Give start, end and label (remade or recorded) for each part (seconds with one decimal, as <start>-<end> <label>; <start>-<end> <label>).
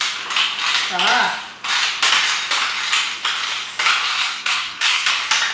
0.0-4.1 recorded; 4.1-5.1 remade; 5.1-5.5 recorded